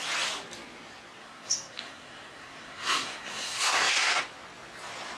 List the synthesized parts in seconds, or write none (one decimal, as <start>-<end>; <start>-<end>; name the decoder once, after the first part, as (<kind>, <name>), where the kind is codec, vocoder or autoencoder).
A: 1.2-4.2 (codec, SNAC)